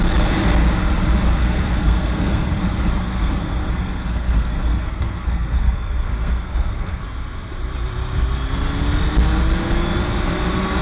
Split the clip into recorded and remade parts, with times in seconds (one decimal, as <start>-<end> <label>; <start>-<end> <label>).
0.0-1.4 recorded; 1.4-2.5 remade; 2.5-3.0 recorded; 3.0-7.0 remade; 7.0-10.8 recorded